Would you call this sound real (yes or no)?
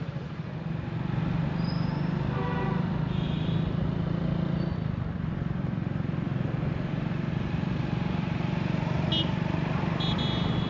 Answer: yes